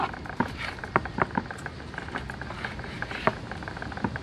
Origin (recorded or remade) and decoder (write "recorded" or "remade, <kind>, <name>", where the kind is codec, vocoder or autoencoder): remade, vocoder, BigVGAN v2